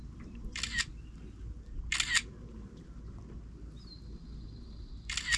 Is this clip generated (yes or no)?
no